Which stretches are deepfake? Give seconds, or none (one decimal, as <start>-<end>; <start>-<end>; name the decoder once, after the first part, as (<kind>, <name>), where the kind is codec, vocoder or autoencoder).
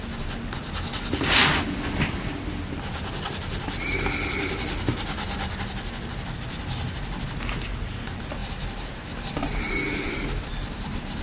1.4-4.8 (vocoder, BigVGAN v2); 8.4-9.7